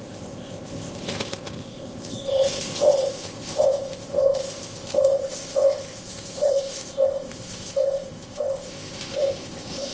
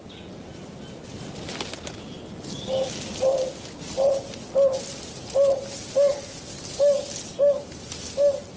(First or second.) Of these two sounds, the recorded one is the second